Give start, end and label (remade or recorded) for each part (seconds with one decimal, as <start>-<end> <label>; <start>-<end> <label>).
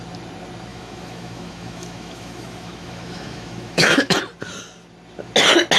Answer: 0.0-0.7 recorded; 0.7-4.2 remade; 4.2-5.8 recorded